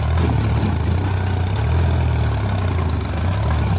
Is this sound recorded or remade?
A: recorded